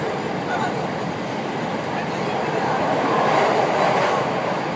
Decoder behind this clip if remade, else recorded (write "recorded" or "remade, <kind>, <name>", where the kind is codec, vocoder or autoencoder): recorded